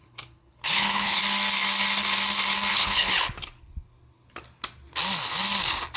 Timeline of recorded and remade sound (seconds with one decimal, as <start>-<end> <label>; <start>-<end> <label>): 0.0-1.2 remade; 1.2-2.7 recorded; 2.7-3.1 remade; 3.1-6.0 recorded